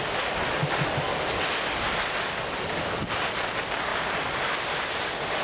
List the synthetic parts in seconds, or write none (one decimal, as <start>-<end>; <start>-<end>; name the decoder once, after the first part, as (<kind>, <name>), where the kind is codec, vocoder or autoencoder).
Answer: none